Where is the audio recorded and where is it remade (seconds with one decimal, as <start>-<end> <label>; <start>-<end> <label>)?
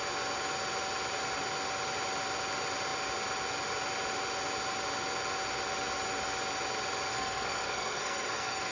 0.0-7.1 recorded; 7.1-8.7 remade